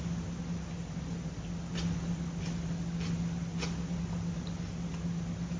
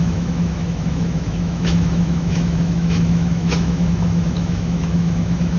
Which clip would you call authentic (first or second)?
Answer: first